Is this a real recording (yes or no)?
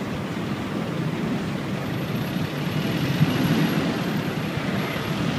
yes